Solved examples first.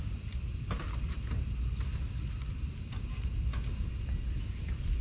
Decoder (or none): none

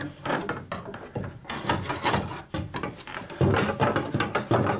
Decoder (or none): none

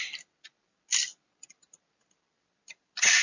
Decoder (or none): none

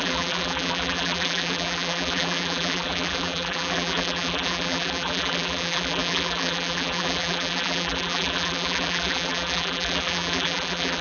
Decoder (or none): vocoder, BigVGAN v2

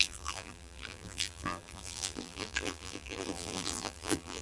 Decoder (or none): vocoder, BigVGAN v2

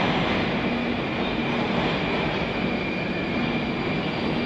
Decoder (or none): none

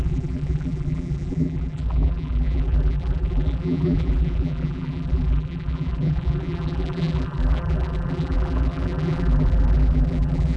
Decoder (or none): vocoder, BigVGAN v2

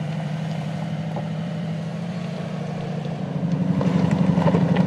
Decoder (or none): vocoder, BigVGAN v2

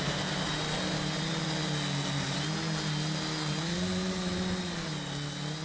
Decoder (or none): none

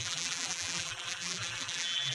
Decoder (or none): vocoder, BigVGAN v2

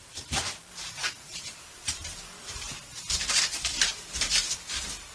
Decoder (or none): vocoder, BigVGAN v2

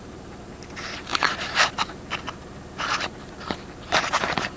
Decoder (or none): vocoder, BigVGAN v2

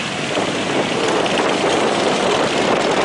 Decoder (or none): none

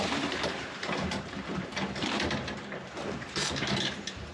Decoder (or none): vocoder, BigVGAN v2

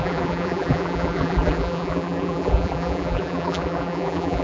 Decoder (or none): vocoder, BigVGAN v2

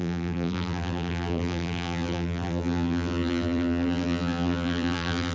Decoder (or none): vocoder, BigVGAN v2